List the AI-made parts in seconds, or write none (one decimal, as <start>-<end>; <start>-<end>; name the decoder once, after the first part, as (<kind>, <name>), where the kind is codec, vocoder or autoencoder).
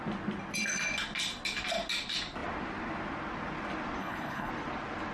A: 4.0-4.5 (codec, HILCodec)